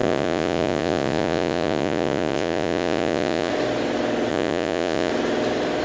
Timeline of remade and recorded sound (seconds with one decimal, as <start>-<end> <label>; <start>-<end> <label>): 0.0-3.5 remade; 3.5-4.3 recorded; 4.3-5.1 remade; 5.1-5.8 recorded